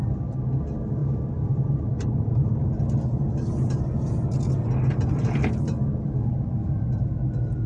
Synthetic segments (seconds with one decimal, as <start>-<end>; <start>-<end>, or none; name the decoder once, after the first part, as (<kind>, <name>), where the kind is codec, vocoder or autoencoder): 1.0-2.7 (vocoder, BigVGAN v2)